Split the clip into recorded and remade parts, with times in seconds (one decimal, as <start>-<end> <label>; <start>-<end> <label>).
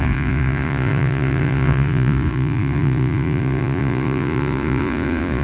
0.0-5.4 remade